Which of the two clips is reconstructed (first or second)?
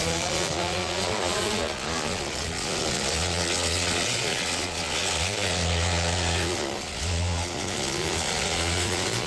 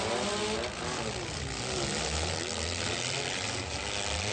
first